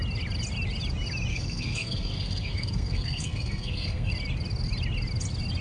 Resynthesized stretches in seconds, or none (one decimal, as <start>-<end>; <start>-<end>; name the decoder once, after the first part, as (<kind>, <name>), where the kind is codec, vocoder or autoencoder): 1.3-4.1 (codec, SNAC)

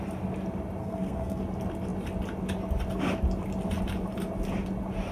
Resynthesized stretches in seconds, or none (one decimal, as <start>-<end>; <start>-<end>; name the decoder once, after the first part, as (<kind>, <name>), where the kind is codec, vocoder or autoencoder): 0.8-1.4 (codec, SNAC)